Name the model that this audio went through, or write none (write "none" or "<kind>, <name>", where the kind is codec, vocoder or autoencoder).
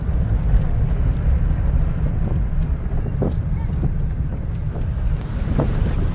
none